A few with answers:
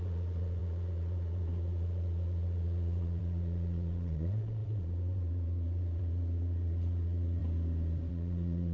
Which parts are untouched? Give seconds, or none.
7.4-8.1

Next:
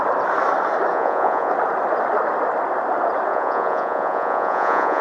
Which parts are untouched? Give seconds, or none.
0.0-0.9; 1.5-3.3

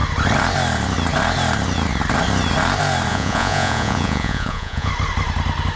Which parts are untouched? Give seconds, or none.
0.0-3.1; 4.9-5.8

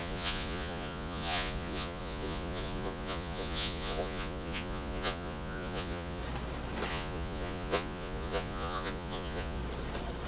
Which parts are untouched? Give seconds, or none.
6.2-6.9; 9.6-10.3

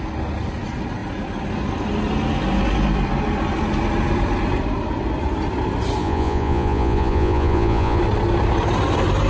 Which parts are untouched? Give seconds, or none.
0.0-6.0; 8.0-9.3